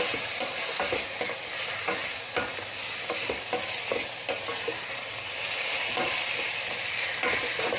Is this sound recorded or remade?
recorded